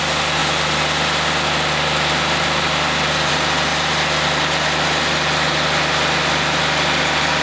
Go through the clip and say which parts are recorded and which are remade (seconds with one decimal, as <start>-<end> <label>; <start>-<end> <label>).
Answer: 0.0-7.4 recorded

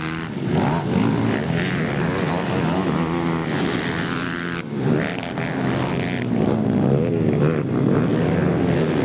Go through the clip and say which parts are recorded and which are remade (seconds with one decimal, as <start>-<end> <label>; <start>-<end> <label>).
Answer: 0.0-9.0 recorded

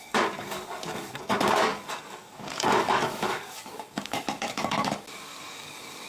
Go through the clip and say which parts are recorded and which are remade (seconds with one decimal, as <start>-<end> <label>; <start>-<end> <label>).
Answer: 0.0-6.1 remade

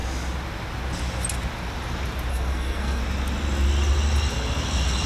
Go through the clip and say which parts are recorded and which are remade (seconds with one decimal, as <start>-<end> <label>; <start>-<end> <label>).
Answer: 0.0-2.3 recorded; 2.3-3.0 remade; 3.0-5.1 recorded

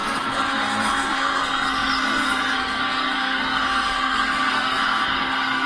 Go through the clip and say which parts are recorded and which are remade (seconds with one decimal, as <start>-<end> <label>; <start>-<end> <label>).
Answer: 0.0-5.7 remade

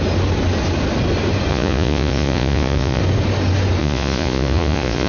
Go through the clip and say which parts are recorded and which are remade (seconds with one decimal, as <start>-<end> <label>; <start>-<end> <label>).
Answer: 0.0-1.5 recorded; 1.5-3.0 remade; 3.0-3.8 recorded; 3.8-5.1 remade

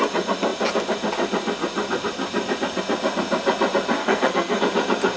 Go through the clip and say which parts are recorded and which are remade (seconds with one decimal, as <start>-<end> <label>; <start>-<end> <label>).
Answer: 0.0-4.0 recorded; 4.0-4.6 remade; 4.6-5.2 recorded